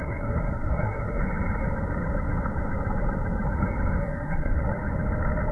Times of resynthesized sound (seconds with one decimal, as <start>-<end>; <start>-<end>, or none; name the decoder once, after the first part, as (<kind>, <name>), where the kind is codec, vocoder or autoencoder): 0.0-1.2 (codec, SNAC); 4.0-4.6